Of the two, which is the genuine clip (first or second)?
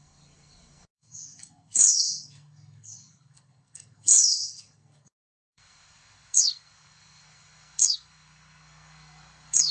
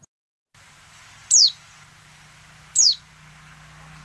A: second